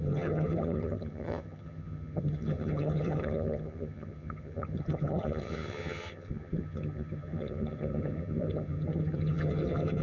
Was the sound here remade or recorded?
remade